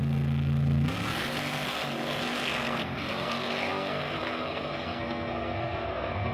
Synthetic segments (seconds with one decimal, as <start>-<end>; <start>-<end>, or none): 0.0-6.3